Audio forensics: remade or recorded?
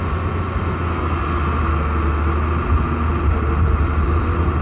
recorded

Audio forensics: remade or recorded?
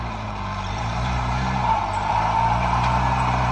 remade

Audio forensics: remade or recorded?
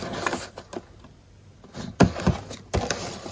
recorded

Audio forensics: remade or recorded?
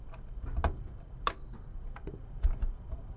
recorded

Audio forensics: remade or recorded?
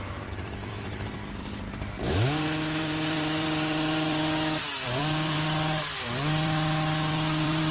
remade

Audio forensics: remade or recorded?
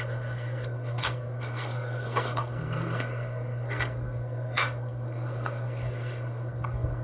remade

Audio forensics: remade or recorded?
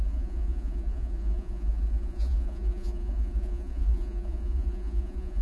remade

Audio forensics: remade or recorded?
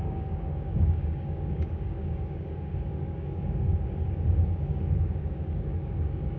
remade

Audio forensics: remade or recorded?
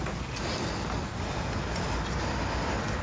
recorded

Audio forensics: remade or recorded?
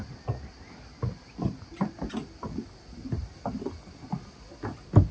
recorded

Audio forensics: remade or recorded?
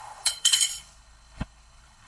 remade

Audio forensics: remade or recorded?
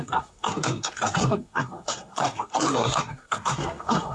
remade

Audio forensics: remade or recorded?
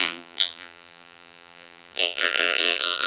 remade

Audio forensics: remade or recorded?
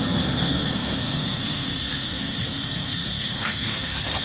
remade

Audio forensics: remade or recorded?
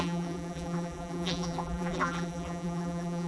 remade